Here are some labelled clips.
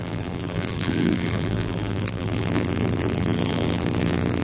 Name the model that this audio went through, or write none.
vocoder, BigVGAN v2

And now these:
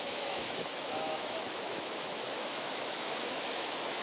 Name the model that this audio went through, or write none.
autoencoder, DAC-VAE